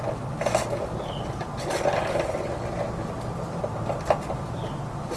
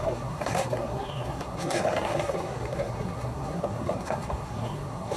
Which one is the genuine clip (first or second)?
first